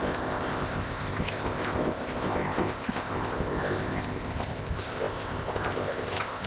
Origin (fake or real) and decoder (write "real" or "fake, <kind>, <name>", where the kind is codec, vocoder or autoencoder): fake, codec, ZipCodec